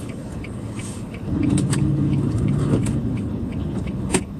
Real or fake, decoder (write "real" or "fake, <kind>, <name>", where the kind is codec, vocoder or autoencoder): fake, codec, HILCodec